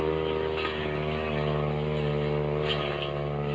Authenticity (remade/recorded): recorded